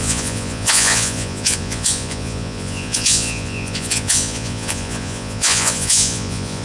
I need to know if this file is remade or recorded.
remade